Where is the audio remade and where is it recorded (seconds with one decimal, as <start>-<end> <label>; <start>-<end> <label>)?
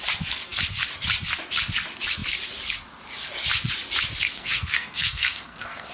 0.0-4.3 recorded; 4.3-5.9 remade